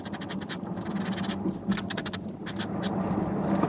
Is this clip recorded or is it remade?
recorded